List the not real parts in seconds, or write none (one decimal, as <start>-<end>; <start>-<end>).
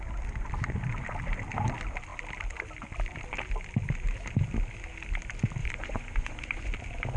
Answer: 5.6-6.7